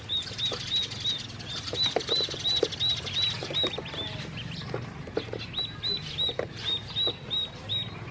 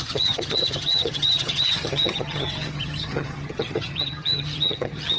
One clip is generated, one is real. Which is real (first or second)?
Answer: first